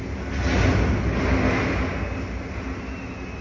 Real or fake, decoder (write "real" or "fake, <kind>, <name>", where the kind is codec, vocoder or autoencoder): real